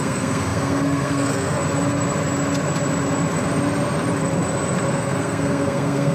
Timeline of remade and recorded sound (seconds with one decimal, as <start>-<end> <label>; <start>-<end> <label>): 0.0-1.6 remade; 1.6-4.9 recorded; 4.9-6.1 remade